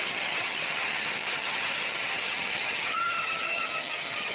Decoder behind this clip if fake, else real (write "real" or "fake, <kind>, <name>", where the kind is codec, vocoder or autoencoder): fake, vocoder, HiFi-GAN